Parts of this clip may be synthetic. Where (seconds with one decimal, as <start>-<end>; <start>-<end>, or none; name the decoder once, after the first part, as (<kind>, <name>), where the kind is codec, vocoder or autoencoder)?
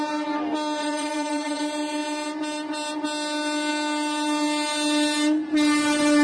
0.8-1.6 (vocoder, Vocos)